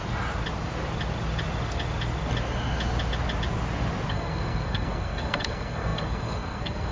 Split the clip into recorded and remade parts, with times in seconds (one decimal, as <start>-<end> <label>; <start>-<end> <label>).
0.0-4.1 recorded; 4.1-6.9 remade